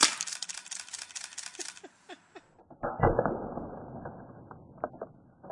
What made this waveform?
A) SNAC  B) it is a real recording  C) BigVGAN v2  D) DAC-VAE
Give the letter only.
B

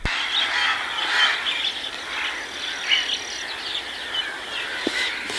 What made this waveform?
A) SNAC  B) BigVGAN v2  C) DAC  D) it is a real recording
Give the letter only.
D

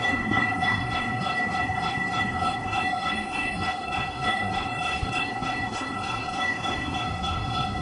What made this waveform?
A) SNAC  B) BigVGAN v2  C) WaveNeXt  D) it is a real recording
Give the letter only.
A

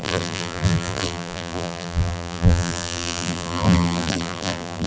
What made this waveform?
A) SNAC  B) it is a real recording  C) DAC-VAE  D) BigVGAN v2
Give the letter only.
D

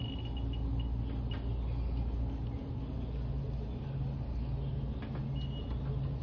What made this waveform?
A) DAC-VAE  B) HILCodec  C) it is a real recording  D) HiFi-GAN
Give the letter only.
C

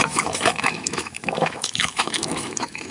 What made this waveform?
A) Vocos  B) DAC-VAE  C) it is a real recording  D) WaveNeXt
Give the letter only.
B